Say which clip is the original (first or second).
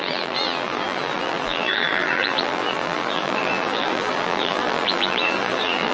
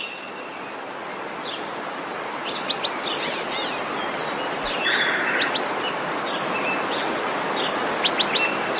second